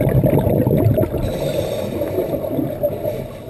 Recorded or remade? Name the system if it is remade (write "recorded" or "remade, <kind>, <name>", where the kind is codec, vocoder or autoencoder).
recorded